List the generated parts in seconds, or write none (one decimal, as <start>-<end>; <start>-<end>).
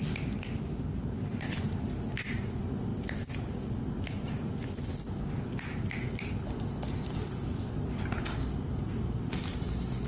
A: none